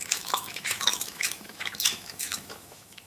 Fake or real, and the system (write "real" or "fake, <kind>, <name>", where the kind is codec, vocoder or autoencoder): fake, autoencoder, DAC-VAE